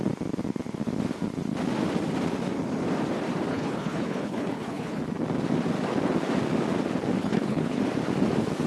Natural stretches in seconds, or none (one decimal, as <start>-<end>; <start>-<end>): 0.0-3.5; 5.0-7.2; 7.8-8.7